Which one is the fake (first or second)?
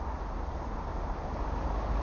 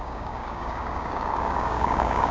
second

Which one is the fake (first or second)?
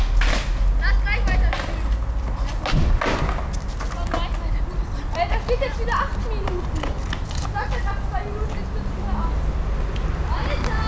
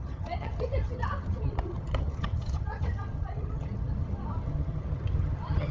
second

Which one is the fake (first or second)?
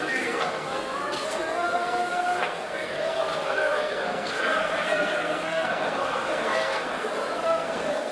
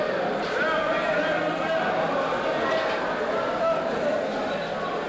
first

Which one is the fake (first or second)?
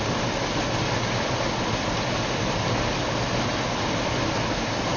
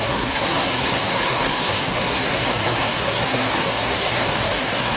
second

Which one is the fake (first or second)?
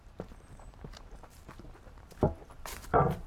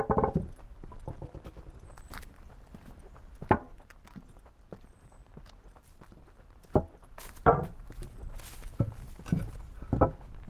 first